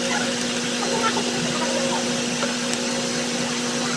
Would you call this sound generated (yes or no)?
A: no